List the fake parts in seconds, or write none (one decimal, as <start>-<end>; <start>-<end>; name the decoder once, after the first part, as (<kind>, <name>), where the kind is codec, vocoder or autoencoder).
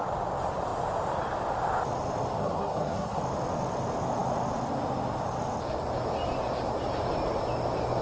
2.4-3.2 (codec, SNAC)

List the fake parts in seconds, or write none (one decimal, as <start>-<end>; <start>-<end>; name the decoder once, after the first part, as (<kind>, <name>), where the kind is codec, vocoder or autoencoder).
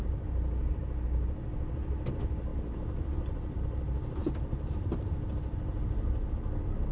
2.5-3.6 (vocoder, BigVGAN v2); 4.2-5.3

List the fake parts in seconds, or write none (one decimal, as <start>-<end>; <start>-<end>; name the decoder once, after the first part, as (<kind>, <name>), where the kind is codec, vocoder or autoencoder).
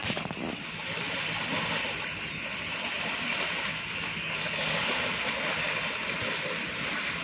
3.7-4.8 (codec, DAC)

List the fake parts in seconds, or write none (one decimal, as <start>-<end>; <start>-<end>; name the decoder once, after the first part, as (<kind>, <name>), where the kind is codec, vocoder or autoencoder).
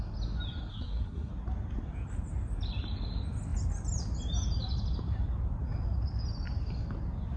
0.7-1.3 (codec, SNAC)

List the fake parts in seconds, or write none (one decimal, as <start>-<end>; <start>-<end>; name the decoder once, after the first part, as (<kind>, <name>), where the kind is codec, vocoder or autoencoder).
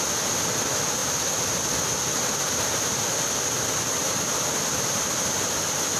none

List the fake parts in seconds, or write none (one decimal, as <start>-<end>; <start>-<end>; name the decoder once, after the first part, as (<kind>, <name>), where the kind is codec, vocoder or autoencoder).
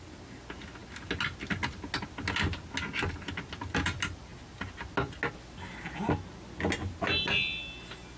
none